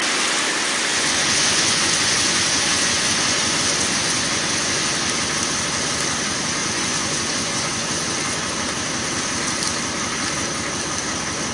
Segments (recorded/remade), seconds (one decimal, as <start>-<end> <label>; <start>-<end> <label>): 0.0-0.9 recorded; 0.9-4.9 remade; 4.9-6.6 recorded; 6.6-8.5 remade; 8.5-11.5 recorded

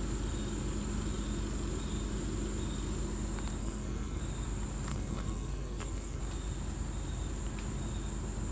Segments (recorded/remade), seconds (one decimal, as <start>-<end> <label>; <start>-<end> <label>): 0.0-3.6 recorded; 3.6-4.2 remade; 4.2-4.9 recorded; 4.9-6.2 remade; 6.2-8.5 recorded

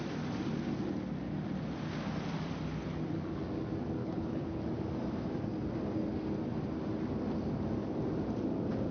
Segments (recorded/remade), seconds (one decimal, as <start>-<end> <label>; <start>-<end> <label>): 0.0-4.0 recorded; 4.0-4.6 remade; 4.6-8.9 recorded

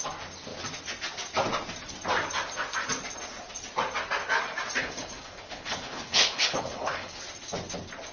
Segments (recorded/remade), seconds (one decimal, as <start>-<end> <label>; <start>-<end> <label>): 0.0-4.8 recorded; 4.8-7.2 remade; 7.2-8.1 recorded